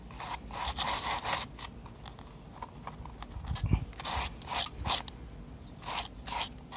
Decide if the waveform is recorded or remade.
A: recorded